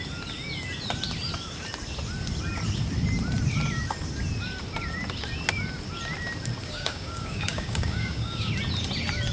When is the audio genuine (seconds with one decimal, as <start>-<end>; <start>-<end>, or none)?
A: 0.0-6.6; 8.5-9.3